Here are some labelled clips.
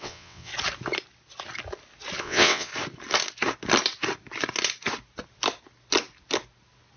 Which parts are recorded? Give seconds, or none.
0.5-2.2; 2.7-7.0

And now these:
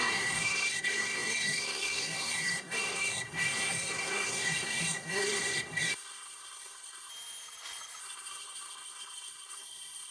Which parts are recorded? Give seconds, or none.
7.1-8.0

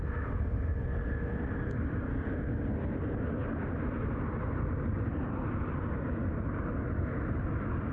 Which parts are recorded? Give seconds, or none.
0.0-3.4; 7.5-7.9

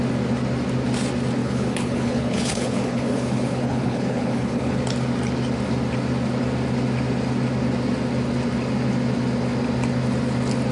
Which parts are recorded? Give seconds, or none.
0.0-1.4; 4.8-10.7

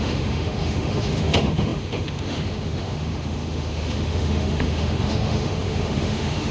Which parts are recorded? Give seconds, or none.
none

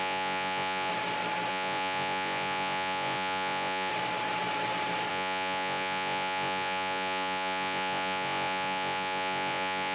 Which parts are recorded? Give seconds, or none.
0.9-1.5; 3.9-5.1

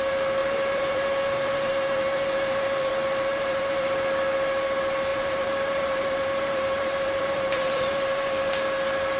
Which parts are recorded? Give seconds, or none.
0.0-0.4; 2.9-3.3; 3.9-5.1; 8.5-9.2

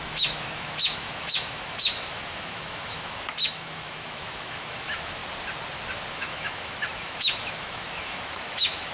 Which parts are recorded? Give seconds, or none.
5.2-6.1